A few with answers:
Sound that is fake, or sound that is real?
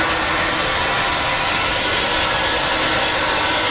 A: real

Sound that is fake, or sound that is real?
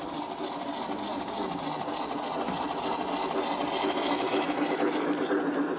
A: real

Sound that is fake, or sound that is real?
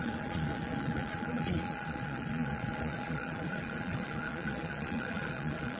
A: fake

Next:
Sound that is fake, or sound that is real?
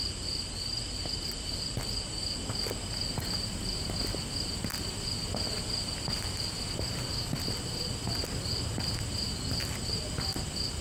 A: real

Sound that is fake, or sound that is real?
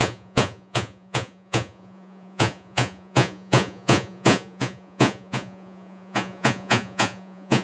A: fake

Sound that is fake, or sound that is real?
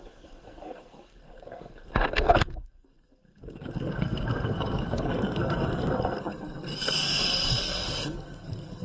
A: fake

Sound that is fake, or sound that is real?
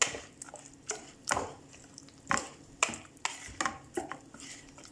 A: real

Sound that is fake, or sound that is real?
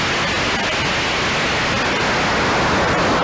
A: real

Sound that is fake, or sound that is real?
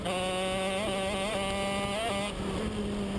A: real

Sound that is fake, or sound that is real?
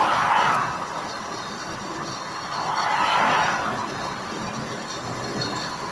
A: real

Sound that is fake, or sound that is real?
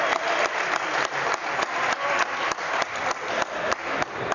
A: real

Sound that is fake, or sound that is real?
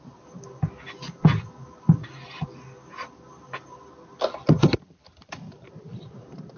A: fake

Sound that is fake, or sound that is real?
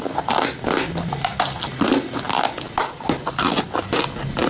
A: real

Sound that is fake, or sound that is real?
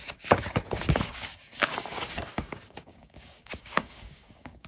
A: fake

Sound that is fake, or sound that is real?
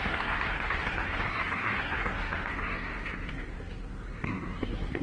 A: fake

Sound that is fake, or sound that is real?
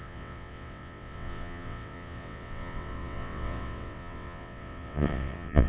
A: fake